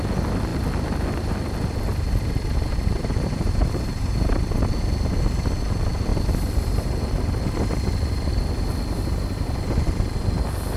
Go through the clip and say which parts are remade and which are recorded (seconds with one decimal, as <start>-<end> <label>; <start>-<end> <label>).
0.0-1.9 recorded; 1.9-4.7 remade; 4.7-10.8 recorded